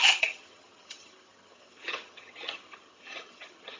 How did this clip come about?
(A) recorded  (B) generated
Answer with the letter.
B